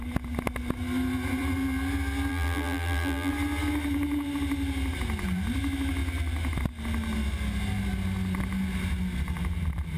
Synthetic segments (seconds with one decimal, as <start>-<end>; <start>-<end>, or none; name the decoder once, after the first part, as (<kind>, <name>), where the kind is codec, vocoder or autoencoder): 2.3-3.3 (vocoder, BigVGAN v2)